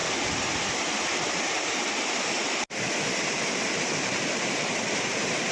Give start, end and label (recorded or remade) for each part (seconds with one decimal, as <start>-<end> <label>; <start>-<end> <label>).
0.0-3.3 recorded; 3.3-5.5 remade